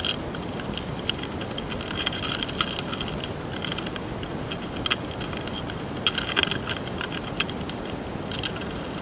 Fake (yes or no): no